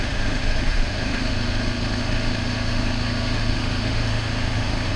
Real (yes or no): no